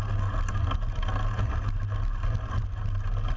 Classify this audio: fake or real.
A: real